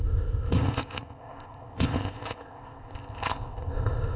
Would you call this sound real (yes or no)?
no